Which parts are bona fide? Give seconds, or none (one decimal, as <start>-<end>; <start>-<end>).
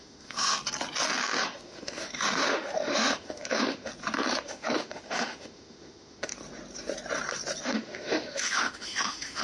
0.6-1.2; 3.9-4.4; 6.3-7.6